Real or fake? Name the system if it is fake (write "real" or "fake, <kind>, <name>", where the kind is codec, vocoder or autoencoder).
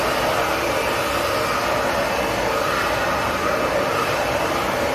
real